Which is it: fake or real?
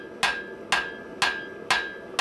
real